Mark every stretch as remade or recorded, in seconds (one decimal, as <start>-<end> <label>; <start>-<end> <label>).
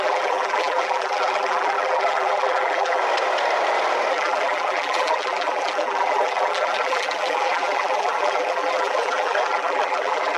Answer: 0.0-3.0 remade; 3.0-4.1 recorded; 4.1-10.4 remade